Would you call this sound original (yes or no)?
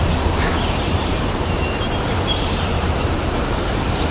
no